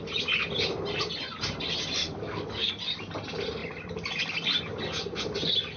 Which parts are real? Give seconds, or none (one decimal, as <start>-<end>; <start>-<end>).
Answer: 0.0-2.0; 2.7-5.8